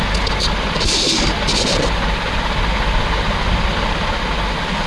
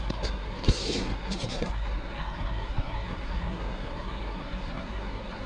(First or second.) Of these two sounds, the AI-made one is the second